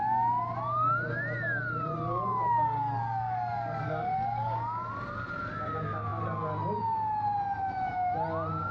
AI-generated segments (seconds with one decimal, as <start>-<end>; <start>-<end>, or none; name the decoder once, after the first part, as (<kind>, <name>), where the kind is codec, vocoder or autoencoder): 2.3-4.9 (codec, DAC)